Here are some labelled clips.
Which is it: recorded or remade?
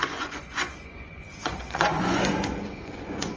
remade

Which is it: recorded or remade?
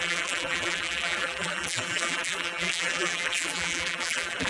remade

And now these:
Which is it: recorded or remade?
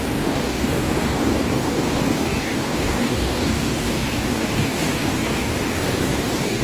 remade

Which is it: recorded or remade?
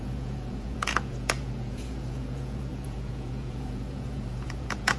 remade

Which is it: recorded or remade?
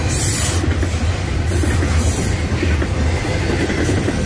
recorded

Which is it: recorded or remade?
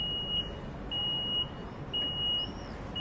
recorded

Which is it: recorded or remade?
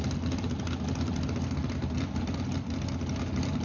recorded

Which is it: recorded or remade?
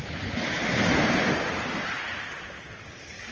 recorded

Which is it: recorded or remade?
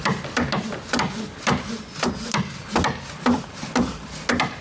recorded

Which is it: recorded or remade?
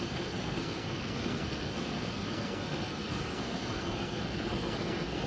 remade